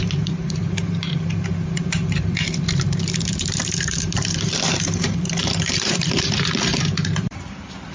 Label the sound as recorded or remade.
remade